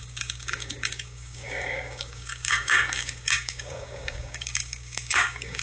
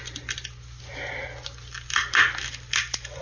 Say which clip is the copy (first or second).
first